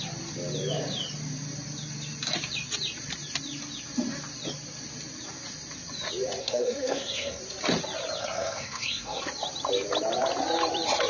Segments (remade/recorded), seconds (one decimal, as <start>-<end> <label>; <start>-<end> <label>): 0.0-6.4 recorded; 6.4-7.4 remade; 7.4-8.2 recorded; 8.2-9.2 remade; 9.2-11.1 recorded